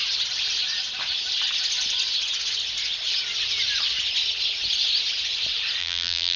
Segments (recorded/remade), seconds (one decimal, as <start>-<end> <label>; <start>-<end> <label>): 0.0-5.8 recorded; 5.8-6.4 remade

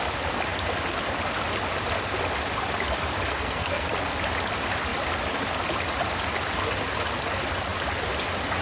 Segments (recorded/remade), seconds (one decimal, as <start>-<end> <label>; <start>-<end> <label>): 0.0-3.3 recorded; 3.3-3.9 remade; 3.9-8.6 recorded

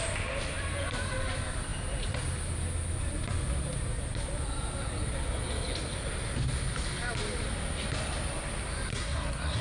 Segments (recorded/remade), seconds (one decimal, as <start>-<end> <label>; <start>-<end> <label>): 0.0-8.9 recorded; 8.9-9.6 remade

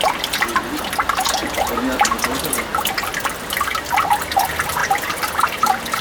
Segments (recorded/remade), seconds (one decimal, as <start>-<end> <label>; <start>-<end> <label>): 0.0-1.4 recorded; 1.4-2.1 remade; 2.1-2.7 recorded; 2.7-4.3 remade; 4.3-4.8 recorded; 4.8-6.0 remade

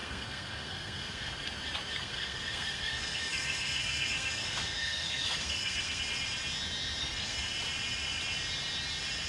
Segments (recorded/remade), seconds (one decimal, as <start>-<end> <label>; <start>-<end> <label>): 0.0-1.5 remade; 1.5-2.0 recorded; 2.0-6.0 remade; 6.0-7.0 recorded; 7.0-7.5 remade; 7.5-9.3 recorded

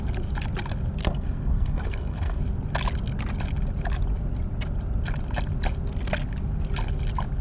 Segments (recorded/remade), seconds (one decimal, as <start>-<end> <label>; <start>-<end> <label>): 0.0-1.0 recorded; 1.0-2.4 remade; 2.4-7.4 recorded

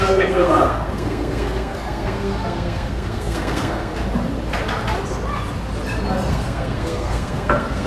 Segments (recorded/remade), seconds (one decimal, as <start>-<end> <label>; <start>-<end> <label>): 0.0-3.9 remade; 3.9-6.3 recorded; 6.3-7.9 remade